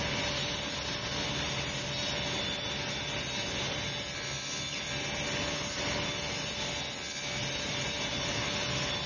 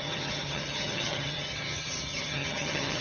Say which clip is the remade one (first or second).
second